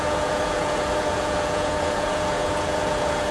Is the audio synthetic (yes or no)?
yes